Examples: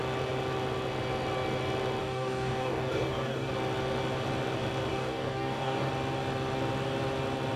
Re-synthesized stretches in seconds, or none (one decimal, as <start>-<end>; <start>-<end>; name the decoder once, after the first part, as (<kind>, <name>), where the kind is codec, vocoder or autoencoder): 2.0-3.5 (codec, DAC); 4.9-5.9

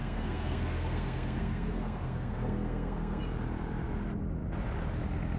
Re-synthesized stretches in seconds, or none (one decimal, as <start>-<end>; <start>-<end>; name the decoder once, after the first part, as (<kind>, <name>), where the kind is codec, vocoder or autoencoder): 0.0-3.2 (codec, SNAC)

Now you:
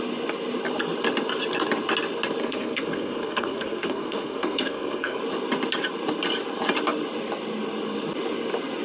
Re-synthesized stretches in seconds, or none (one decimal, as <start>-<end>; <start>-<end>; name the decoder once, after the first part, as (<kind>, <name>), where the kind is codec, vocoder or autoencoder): 2.4-5.2 (codec, SNAC)

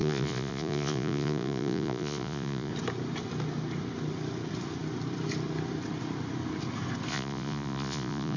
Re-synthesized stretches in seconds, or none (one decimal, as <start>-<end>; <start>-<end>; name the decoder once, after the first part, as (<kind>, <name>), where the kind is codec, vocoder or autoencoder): 0.0-2.7 (vocoder, Vocos); 7.1-8.4

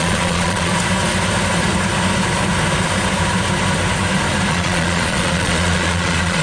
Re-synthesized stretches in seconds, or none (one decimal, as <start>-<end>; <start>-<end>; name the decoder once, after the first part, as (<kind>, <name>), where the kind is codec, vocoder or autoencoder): 0.0-0.7 (vocoder, Vocos); 4.5-6.4